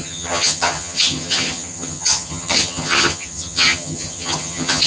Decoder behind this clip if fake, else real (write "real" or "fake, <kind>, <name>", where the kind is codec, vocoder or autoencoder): fake, vocoder, HiFi-GAN